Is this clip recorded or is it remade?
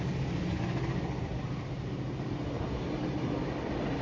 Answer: recorded